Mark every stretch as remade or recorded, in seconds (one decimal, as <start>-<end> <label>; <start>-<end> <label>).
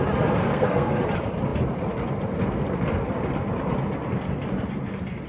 0.0-0.4 recorded; 0.4-1.0 remade; 1.0-5.3 recorded